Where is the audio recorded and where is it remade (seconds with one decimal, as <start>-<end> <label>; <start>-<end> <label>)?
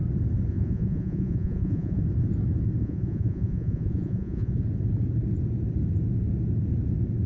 0.0-0.5 recorded; 0.5-2.0 remade; 2.0-2.8 recorded; 2.8-4.6 remade; 4.6-7.3 recorded